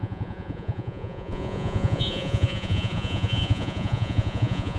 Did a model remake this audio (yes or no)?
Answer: yes